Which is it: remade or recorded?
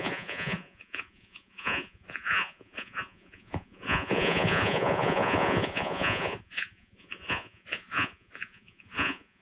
remade